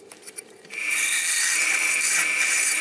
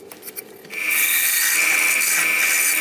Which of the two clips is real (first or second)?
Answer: second